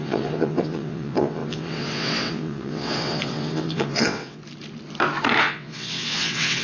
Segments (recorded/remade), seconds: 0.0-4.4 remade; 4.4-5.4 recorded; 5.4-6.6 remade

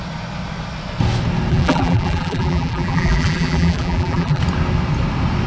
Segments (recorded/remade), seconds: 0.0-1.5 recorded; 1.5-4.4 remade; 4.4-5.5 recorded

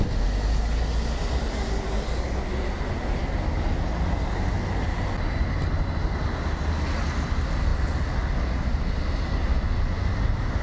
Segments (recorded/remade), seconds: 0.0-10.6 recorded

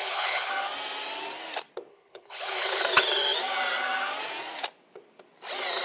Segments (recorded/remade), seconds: 0.0-0.5 remade; 0.5-1.9 recorded; 1.9-2.8 remade; 2.8-5.8 recorded

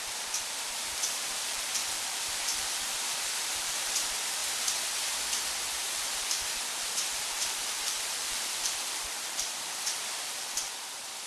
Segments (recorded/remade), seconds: 0.0-4.4 remade; 4.4-5.8 recorded; 5.8-11.3 remade

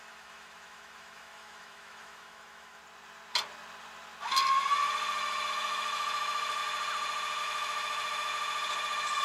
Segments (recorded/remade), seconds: 0.0-2.8 remade; 2.8-5.5 recorded; 5.5-6.6 remade; 6.6-7.4 recorded; 7.4-8.3 remade; 8.3-9.2 recorded

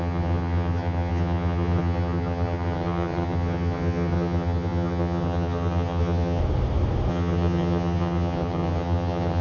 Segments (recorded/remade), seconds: 0.0-6.4 remade; 6.4-7.1 recorded; 7.1-9.4 remade